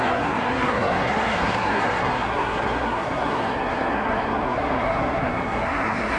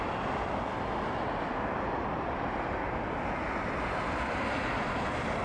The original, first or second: second